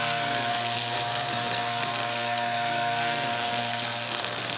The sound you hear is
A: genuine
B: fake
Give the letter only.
B